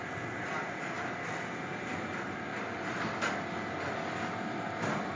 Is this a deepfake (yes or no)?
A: no